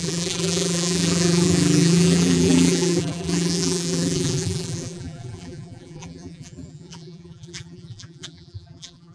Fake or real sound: fake